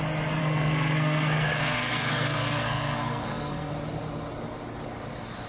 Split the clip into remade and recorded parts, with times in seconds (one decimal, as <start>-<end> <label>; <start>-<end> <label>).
0.0-0.4 recorded; 0.4-3.7 remade; 3.7-5.5 recorded